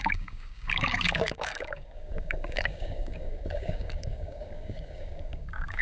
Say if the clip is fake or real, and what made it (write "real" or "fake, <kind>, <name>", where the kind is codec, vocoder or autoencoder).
fake, codec, DAC